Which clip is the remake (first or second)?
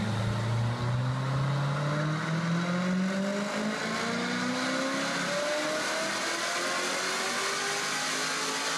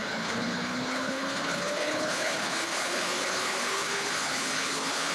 second